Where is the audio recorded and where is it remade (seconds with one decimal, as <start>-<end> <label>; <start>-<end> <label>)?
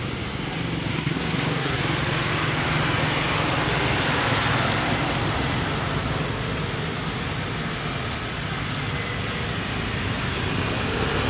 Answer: 0.0-0.9 recorded; 0.9-1.8 remade; 1.8-11.3 recorded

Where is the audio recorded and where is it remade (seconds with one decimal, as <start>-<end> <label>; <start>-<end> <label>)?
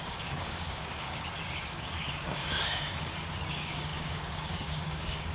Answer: 0.0-2.9 remade; 2.9-3.5 recorded; 3.5-5.3 remade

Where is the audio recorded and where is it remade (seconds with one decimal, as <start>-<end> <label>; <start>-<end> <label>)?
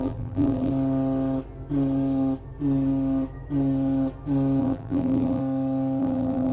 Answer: 0.0-0.7 remade; 0.7-4.6 recorded; 4.6-5.4 remade; 5.4-6.0 recorded; 6.0-6.5 remade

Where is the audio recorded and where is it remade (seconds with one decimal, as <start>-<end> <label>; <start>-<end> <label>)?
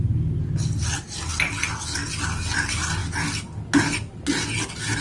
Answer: 0.0-5.0 recorded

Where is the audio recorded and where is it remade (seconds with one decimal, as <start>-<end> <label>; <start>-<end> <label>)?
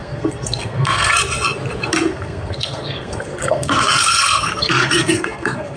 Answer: 0.0-1.1 remade; 1.1-2.1 recorded; 2.1-5.8 remade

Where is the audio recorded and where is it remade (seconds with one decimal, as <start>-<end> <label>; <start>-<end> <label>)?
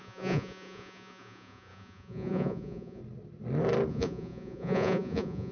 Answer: 0.0-3.0 remade; 3.0-3.9 recorded; 3.9-5.5 remade